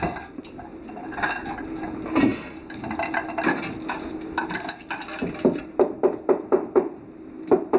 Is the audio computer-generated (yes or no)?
no